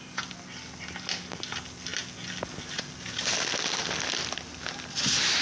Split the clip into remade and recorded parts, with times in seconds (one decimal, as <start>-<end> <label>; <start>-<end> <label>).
0.0-5.4 recorded